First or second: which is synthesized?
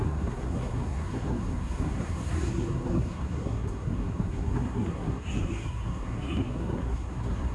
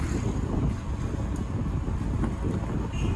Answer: first